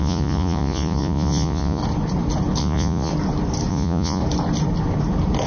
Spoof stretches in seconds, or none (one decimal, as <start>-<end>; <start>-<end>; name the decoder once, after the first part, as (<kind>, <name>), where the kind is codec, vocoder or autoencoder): 0.0-1.8 (vocoder, Vocos); 2.6-3.1; 3.7-4.2